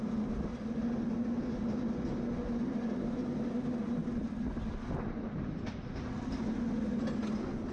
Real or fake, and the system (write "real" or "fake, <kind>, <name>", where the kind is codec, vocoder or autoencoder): real